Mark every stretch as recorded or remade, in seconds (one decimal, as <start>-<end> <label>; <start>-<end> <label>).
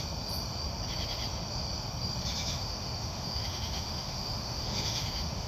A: 0.0-2.5 recorded; 2.5-5.5 remade